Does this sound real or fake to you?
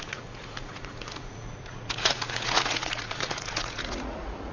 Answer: fake